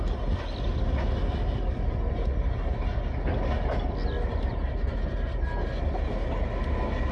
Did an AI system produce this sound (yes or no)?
no